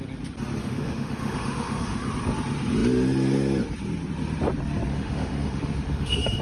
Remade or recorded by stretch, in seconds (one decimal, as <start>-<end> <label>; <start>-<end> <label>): 0.0-0.6 recorded; 0.6-2.1 remade; 2.1-4.9 recorded; 4.9-6.4 remade